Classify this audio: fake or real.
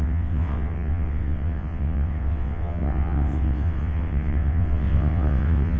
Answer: fake